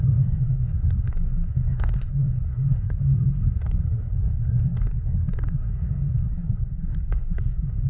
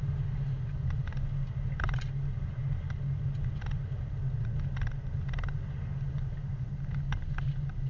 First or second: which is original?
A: second